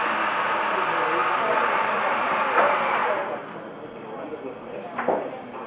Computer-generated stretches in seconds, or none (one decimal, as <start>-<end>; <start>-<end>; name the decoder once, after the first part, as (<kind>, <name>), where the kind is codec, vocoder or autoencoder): 1.2-2.4 (vocoder, BigVGAN v2); 3.0-3.7